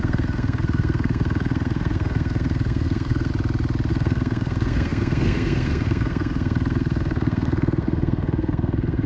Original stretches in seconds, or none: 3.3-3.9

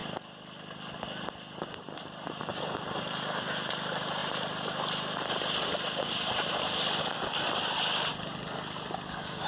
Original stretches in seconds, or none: 0.0-9.5

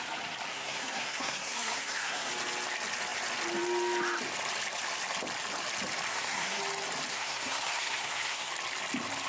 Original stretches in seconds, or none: 0.0-0.5; 2.3-6.1; 6.6-7.1; 8.5-9.3

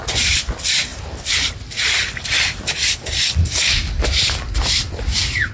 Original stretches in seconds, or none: 0.0-5.5

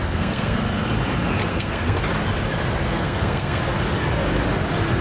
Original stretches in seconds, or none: 0.6-1.5; 2.0-2.8; 3.6-5.0

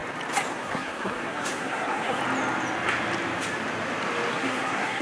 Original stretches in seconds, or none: 0.0-0.5; 2.2-4.3

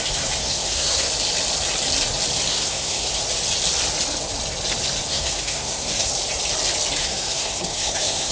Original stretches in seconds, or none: 0.0-0.4; 1.1-2.5; 3.1-5.1; 6.1-7.0

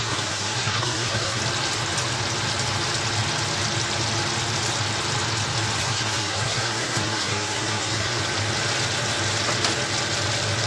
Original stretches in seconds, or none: 1.4-5.8; 8.2-10.7